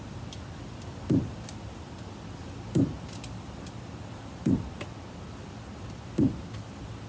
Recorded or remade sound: remade